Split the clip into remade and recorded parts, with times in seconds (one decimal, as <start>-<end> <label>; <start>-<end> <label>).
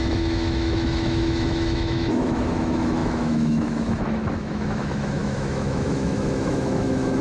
0.0-7.2 remade